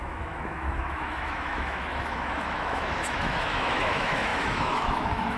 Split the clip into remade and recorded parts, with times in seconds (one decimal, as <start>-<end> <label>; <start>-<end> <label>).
0.0-5.4 remade